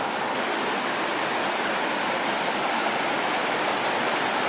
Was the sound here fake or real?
real